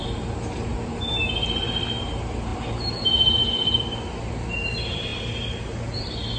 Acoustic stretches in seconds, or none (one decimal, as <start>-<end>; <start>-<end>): 0.0-2.5; 4.0-6.4

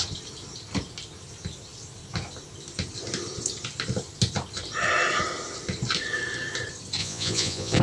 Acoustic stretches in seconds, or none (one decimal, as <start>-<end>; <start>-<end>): 0.0-7.0

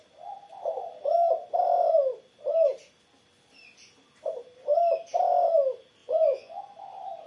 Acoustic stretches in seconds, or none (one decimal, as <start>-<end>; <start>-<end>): 0.0-6.0; 6.6-7.3

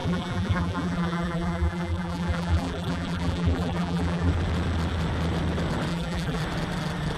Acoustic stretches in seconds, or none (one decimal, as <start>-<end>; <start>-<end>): 4.3-5.9; 6.4-7.2